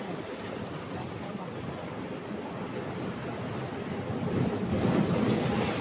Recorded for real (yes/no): yes